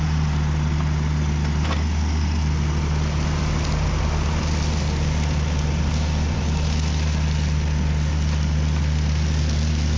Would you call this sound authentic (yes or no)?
yes